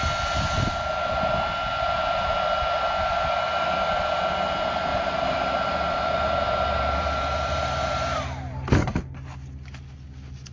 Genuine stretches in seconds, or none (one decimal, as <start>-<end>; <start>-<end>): 0.0-4.9; 9.0-10.5